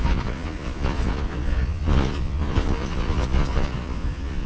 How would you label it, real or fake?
fake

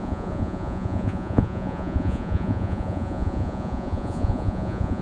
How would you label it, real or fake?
fake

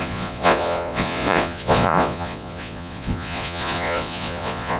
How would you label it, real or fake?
fake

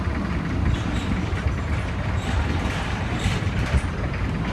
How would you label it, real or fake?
real